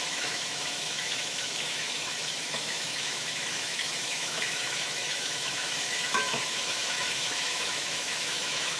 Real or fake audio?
fake